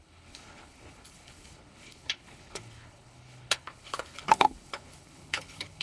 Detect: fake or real fake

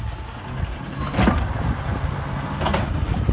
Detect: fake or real real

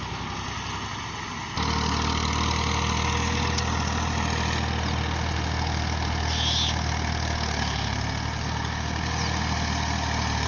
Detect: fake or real real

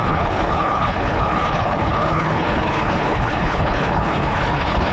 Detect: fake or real fake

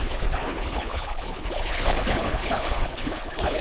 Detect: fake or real fake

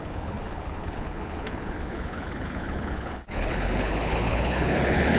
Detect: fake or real fake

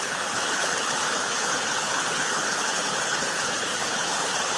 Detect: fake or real fake